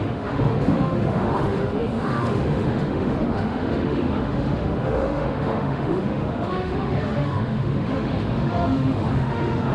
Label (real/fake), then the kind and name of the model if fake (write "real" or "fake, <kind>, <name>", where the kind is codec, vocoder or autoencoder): fake, autoencoder, DAC-VAE